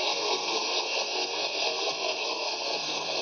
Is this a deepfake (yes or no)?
yes